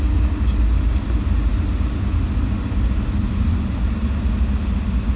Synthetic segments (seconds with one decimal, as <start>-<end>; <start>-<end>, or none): none